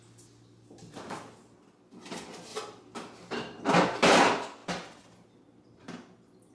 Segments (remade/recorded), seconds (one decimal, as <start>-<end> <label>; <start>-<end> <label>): 0.0-6.5 recorded